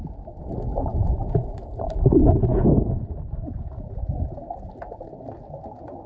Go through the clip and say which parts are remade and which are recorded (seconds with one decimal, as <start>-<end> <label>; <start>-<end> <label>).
0.0-0.9 recorded; 0.9-1.5 remade; 1.5-2.5 recorded; 2.5-4.7 remade; 4.7-6.1 recorded